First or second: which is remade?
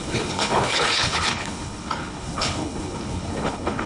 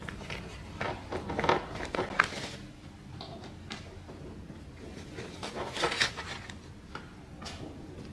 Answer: first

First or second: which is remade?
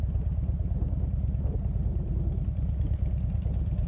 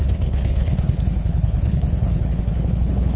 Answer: second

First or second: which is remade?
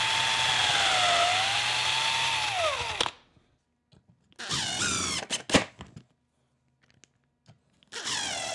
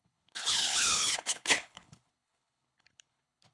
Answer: second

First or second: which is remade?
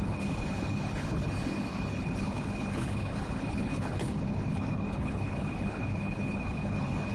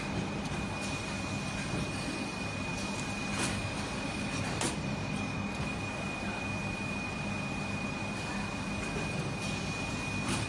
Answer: first